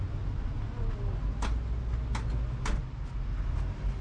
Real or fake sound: real